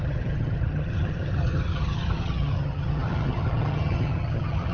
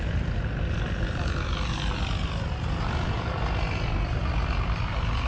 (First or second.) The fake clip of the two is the first